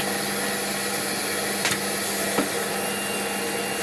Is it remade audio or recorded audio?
recorded